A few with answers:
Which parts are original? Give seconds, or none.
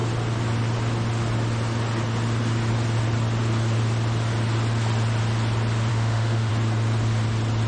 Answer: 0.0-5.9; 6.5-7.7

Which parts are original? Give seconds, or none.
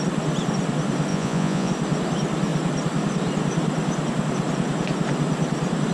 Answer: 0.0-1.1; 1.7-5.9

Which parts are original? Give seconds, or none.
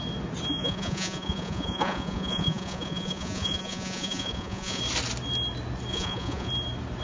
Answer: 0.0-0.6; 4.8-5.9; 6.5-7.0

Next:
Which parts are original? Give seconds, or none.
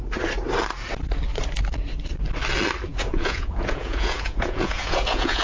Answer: 0.0-2.9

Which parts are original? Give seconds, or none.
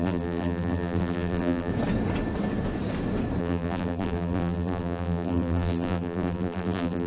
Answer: 1.7-3.4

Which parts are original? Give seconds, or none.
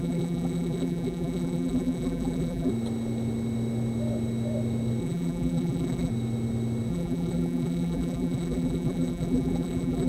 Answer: 2.7-5.0; 6.1-6.9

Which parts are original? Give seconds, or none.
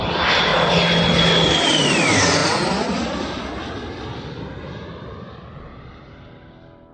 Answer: 0.5-1.6; 2.4-6.0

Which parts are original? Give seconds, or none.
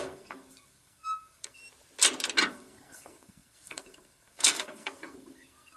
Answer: 1.6-2.5